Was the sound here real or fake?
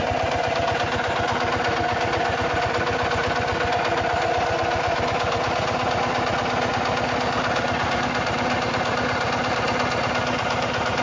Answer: real